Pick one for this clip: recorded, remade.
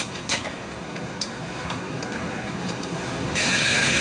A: remade